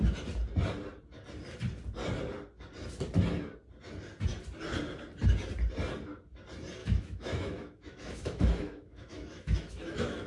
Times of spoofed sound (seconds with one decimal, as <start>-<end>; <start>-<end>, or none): 6.8-10.3